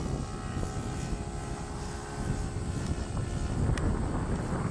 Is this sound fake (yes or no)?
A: no